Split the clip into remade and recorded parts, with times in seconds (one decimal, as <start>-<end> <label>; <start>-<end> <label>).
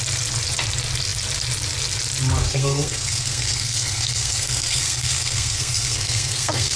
0.0-2.4 recorded; 2.4-6.8 remade